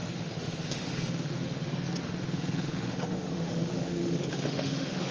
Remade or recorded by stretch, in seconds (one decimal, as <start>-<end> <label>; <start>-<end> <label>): 0.0-1.7 remade; 1.7-2.2 recorded; 2.2-5.1 remade